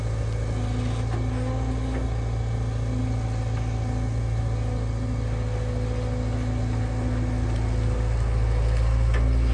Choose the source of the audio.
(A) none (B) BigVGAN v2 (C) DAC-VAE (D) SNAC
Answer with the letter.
A